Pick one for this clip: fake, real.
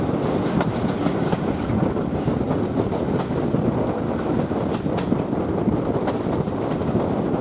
real